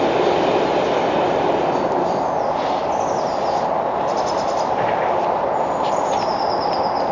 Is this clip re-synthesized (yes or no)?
no